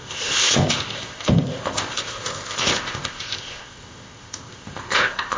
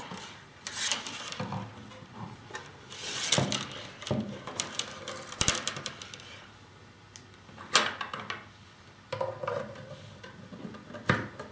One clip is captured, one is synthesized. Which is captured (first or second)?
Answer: second